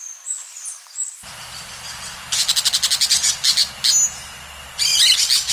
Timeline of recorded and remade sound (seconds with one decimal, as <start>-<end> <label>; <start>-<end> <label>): 0.0-0.7 recorded; 0.7-1.3 remade; 1.3-5.5 recorded